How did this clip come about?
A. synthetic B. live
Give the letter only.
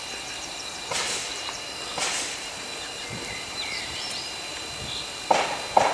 A